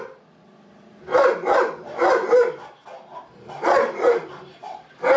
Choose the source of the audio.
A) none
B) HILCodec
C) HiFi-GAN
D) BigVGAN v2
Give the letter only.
A